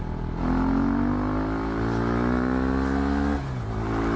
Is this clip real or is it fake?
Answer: real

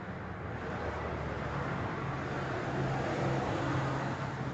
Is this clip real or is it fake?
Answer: real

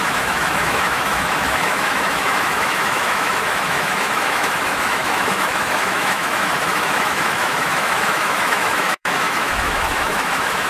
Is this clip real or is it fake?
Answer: fake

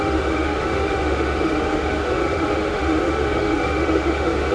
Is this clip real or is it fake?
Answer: fake